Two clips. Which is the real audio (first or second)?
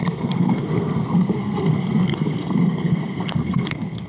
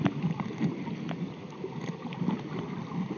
second